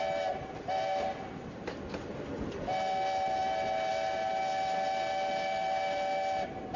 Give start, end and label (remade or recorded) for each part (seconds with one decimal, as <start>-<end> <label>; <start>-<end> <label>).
0.0-6.8 recorded